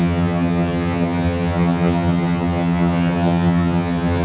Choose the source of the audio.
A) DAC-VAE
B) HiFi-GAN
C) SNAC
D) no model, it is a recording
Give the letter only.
B